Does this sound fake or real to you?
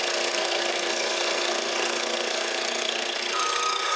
fake